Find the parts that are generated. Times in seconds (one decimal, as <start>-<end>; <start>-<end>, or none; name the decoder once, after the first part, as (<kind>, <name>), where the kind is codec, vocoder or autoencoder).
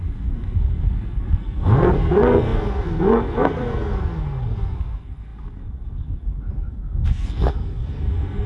0.0-8.5 (codec, SNAC)